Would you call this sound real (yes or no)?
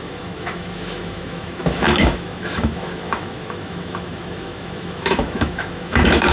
no